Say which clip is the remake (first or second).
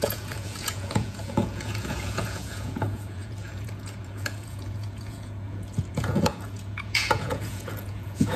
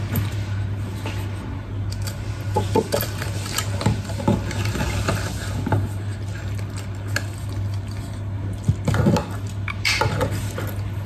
first